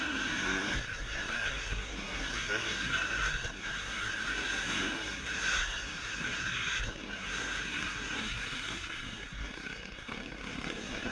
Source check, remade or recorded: remade